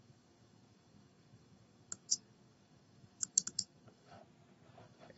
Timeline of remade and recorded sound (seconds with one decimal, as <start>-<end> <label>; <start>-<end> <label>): 0.0-4.2 remade; 4.2-4.8 recorded; 4.8-5.2 remade